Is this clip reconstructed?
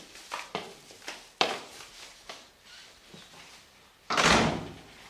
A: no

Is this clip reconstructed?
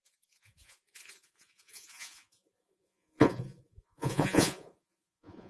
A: yes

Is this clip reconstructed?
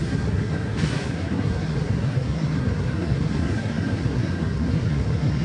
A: yes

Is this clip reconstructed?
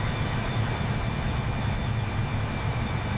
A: no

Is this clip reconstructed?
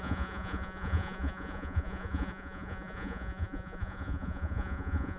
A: yes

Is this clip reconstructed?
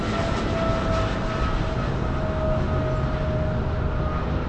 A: no